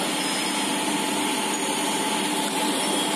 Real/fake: real